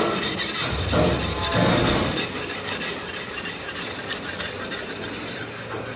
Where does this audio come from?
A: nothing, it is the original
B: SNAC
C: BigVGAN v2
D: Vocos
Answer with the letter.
A